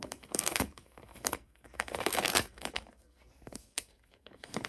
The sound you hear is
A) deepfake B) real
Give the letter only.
A